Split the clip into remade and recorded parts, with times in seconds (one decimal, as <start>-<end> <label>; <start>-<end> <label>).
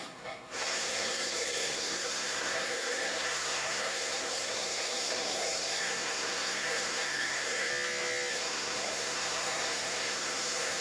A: 0.0-7.7 remade; 7.7-8.3 recorded; 8.3-10.8 remade